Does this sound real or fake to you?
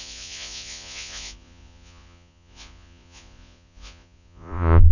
fake